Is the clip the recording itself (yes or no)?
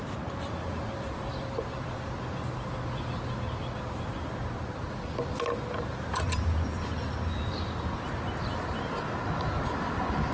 yes